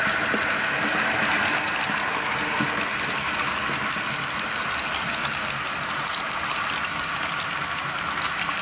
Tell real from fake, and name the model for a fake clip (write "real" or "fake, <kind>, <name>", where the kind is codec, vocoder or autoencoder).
real